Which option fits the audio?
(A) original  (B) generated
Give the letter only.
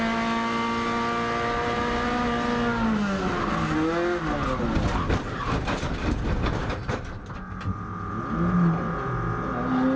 A